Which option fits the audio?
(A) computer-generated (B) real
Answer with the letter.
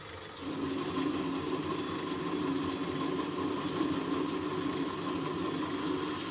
B